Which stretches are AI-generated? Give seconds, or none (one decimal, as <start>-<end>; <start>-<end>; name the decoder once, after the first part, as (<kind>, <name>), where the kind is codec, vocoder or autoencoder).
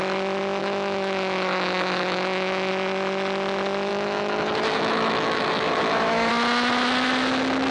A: 0.6-2.7 (autoencoder, DAC-VAE); 3.9-6.3